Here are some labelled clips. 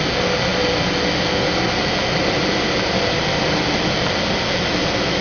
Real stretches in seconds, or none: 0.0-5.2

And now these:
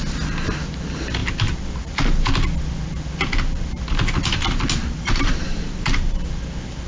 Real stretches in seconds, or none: 0.0-4.8; 6.2-6.9

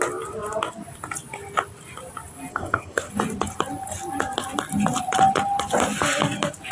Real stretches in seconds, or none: 0.0-2.5; 3.1-6.7

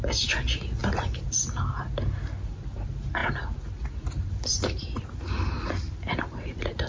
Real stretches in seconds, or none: 0.0-6.9

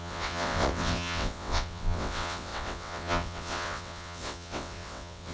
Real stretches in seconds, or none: none

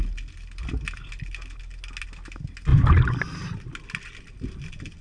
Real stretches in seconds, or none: 0.0-5.0